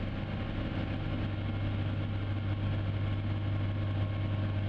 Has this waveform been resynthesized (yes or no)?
no